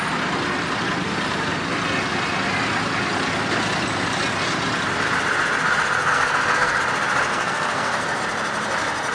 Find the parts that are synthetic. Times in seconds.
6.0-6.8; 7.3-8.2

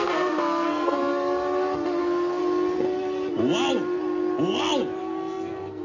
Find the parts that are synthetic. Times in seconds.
0.0-1.1; 2.0-2.4; 5.0-5.8

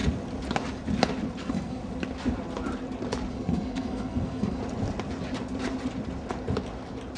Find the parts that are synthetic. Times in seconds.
1.4-1.8; 3.3-4.6

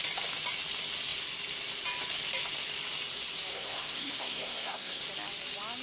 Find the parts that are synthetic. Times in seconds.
3.5-5.0

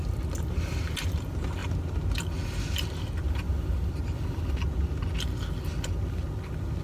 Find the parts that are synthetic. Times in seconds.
none

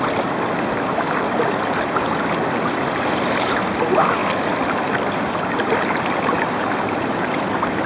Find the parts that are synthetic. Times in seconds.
none